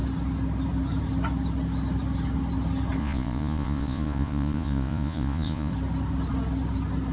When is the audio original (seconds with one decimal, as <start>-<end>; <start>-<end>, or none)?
0.0-3.0; 5.7-7.1